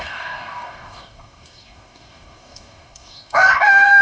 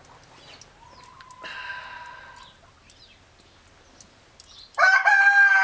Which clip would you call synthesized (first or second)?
first